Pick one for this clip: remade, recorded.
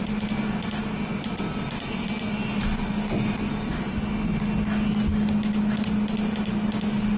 recorded